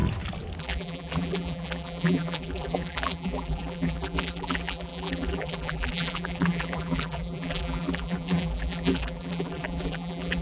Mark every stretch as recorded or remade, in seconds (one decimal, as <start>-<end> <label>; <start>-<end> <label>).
0.0-0.6 recorded; 0.6-10.4 remade